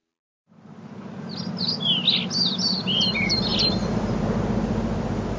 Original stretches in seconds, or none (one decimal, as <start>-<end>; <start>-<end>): 0.0-5.4